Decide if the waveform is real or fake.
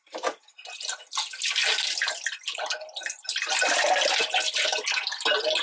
real